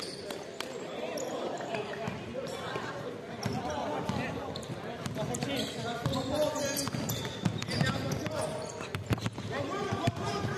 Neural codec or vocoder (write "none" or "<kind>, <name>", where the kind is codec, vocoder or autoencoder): none